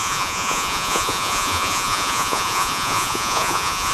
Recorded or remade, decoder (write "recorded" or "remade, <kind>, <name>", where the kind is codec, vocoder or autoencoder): remade, vocoder, Vocos